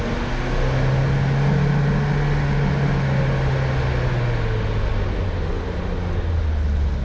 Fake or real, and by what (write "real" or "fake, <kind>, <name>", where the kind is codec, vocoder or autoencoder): real